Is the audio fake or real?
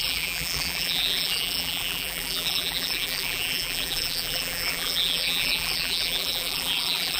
fake